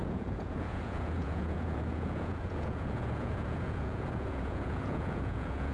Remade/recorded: remade